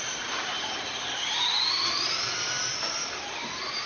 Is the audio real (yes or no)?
yes